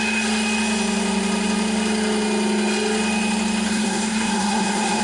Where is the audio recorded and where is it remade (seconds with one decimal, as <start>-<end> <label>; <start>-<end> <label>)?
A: 0.0-3.7 recorded; 3.7-5.0 remade